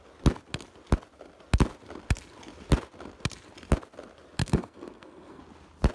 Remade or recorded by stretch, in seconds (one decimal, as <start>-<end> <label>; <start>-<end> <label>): 0.0-4.4 recorded; 4.4-5.4 remade; 5.4-5.9 recorded